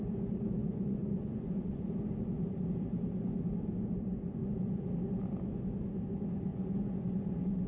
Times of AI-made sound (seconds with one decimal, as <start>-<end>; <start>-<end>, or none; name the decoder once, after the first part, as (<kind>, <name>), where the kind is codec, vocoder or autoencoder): 0.6-1.8 (vocoder, Vocos); 4.4-4.9; 6.5-7.7